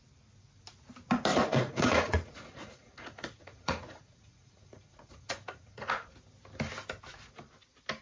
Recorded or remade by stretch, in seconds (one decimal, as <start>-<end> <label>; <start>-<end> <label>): 0.0-1.3 recorded; 1.3-5.9 remade; 5.9-8.0 recorded

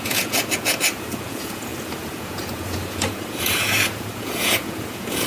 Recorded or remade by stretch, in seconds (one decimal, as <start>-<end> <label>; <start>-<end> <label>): 0.0-5.3 remade

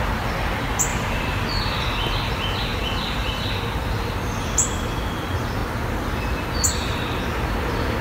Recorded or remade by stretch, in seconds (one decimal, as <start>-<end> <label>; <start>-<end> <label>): 0.0-0.9 recorded; 0.9-1.5 remade; 1.5-2.7 recorded; 2.7-3.5 remade; 3.5-8.0 recorded

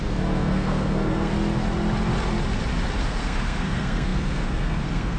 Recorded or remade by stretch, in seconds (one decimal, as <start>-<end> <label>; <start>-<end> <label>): 0.0-1.3 remade; 1.3-3.0 recorded; 3.0-5.2 remade